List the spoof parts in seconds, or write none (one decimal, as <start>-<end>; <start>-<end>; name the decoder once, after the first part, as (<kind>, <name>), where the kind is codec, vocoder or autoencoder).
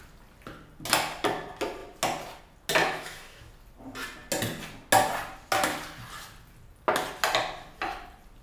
2.8-3.5 (autoencoder, DAC-VAE)